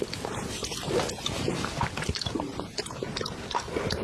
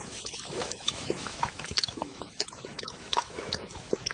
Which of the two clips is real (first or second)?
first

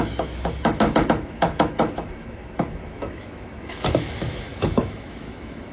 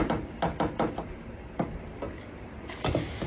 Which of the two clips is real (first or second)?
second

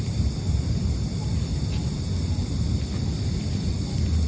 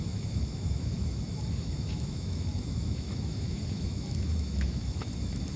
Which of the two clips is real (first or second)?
first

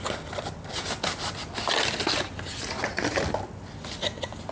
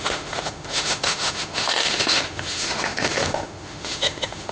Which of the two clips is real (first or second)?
first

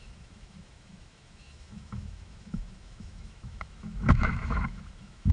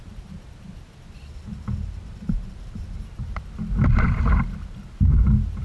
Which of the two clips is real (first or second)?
second